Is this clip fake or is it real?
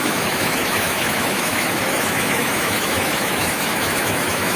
fake